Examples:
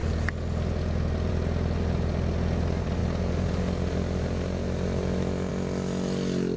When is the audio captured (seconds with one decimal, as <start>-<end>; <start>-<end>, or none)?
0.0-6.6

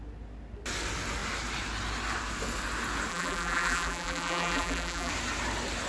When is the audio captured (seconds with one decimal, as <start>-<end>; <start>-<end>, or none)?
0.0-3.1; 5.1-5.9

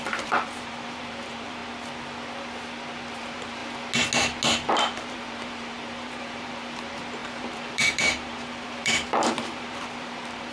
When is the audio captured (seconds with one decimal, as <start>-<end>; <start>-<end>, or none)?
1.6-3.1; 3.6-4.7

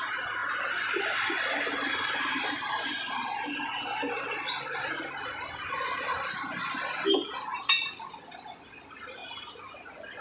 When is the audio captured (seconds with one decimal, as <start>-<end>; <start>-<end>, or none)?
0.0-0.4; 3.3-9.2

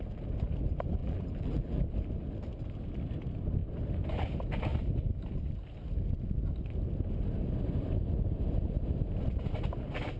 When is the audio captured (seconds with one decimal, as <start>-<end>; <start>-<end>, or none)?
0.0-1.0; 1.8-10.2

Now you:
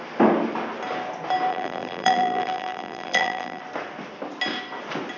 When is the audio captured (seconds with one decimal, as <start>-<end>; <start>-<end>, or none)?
0.0-1.5; 3.6-5.2

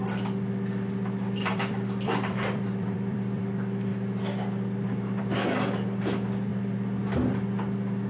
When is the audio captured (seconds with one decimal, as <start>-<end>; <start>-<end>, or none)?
0.0-1.4; 3.4-8.1